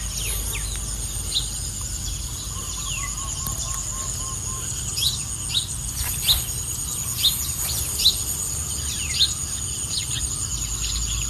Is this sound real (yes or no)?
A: yes